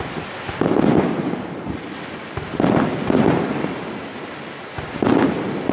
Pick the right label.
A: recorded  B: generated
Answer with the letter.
A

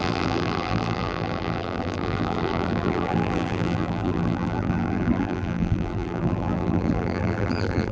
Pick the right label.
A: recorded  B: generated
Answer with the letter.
B